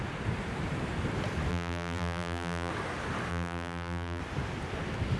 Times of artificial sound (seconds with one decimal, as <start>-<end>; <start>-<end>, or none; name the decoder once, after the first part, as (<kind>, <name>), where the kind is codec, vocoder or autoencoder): 1.5-2.7 (vocoder, BigVGAN v2); 3.3-4.2